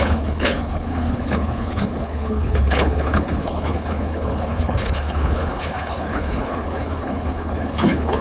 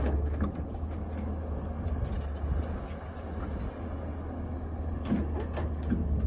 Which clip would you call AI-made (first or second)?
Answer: first